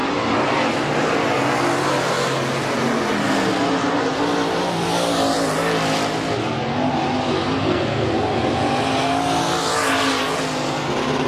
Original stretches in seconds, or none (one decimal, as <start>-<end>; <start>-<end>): 0.0-7.6; 8.1-11.3